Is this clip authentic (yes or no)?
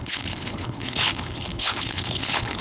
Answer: no